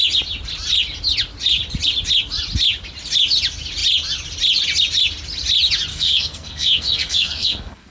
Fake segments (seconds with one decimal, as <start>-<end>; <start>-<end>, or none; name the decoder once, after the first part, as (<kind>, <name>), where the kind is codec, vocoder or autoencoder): 5.9-7.9 (codec, SNAC)